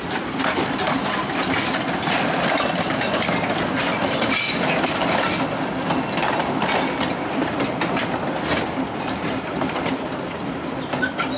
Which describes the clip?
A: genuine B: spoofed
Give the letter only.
A